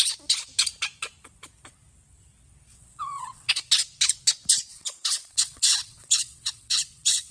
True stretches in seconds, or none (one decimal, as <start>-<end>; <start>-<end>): 0.0-2.7; 3.5-4.7